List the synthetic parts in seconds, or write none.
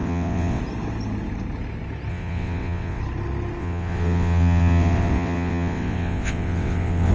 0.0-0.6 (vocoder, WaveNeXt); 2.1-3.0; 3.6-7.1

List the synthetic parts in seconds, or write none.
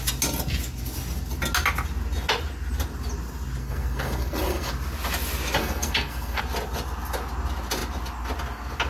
3.6-4.7 (codec, SNAC); 5.6-6.4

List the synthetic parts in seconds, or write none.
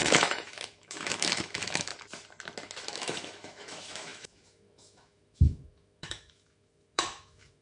0.0-1.9 (autoencoder, DAC-VAE); 2.9-7.6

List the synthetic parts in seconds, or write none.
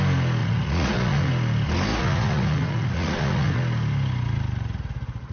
0.4-1.3 (vocoder, Vocos); 1.9-3.6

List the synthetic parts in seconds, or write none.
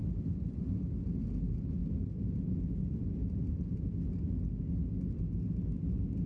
none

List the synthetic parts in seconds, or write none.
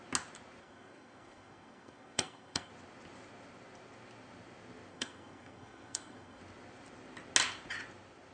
0.6-2.7 (codec, SNAC); 4.9-6.4